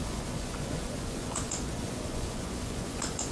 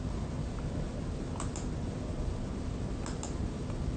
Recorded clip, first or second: second